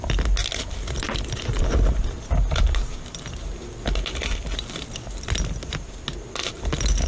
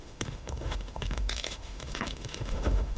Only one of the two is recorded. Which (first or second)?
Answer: first